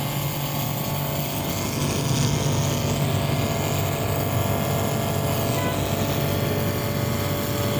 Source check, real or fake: real